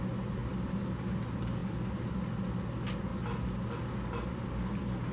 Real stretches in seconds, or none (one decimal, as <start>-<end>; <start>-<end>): 0.0-0.4; 1.0-1.6; 2.2-5.1